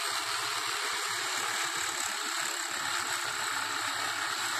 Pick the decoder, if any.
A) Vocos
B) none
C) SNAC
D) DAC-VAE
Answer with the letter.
B